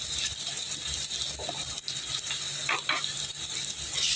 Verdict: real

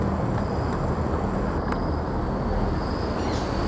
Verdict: real